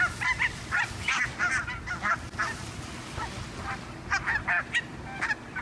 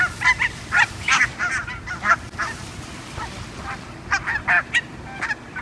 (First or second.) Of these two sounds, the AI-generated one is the second